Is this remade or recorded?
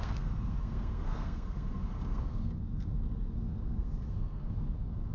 remade